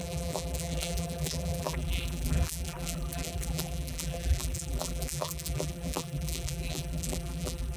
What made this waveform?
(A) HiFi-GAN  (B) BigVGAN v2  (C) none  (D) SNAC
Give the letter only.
B